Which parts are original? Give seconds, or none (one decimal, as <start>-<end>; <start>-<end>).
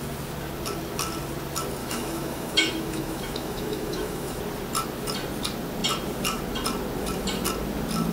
0.0-1.8; 4.4-8.1